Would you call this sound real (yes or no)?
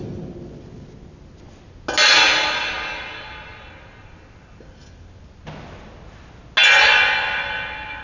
yes